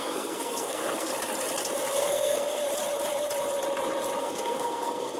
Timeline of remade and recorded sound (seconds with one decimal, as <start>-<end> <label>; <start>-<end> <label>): 0.0-1.1 remade; 1.1-2.0 recorded; 2.0-2.6 remade; 2.6-4.2 recorded; 4.2-5.2 remade